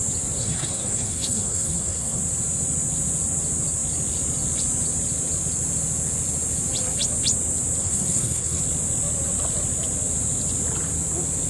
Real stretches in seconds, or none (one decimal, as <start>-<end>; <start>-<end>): 0.0-0.4; 2.2-7.8; 8.6-11.5